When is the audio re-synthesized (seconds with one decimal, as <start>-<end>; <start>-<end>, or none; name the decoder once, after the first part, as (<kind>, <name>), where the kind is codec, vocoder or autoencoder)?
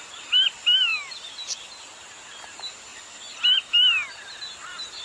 none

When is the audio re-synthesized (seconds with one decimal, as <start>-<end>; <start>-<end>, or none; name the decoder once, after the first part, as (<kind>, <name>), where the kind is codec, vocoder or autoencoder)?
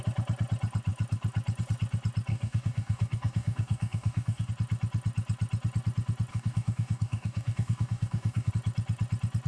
2.3-4.5 (codec, DAC); 6.3-8.5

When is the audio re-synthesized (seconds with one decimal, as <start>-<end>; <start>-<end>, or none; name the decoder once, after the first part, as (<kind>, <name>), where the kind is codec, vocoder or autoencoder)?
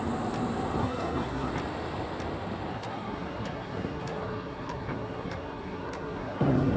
0.8-1.5 (codec, SNAC); 2.7-6.8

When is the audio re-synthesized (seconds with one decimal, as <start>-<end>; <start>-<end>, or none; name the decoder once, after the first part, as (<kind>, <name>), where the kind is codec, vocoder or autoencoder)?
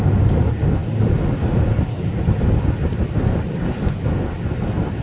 none